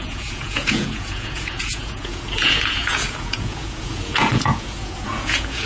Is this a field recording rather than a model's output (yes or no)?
no